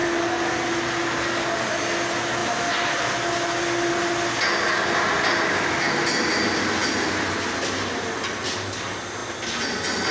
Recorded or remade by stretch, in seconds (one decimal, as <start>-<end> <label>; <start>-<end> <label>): 0.0-10.1 recorded